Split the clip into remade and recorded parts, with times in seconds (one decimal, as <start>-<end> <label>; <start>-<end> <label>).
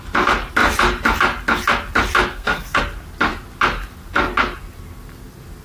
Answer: 0.0-2.3 recorded; 2.3-2.8 remade; 2.8-5.6 recorded